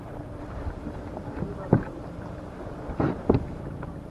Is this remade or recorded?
remade